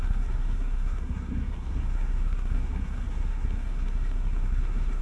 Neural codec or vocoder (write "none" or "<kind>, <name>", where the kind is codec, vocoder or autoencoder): codec, SNAC